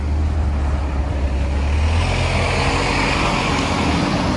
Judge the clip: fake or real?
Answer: real